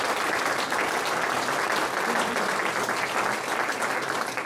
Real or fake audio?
fake